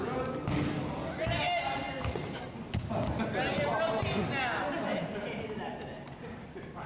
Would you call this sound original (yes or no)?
yes